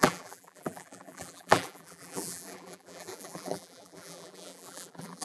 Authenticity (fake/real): fake